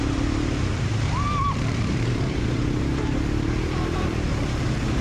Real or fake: fake